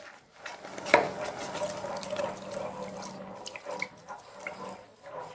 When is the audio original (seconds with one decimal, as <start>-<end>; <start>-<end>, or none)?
0.0-5.3